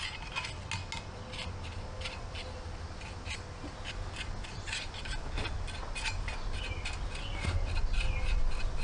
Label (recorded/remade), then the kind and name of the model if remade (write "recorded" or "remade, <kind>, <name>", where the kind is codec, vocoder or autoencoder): recorded